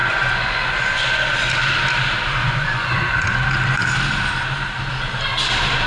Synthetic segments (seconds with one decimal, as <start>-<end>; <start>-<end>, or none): 0.0-1.5; 2.4-3.4